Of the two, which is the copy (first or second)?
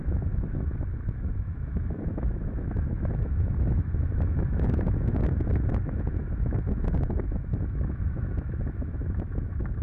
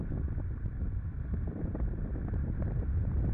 first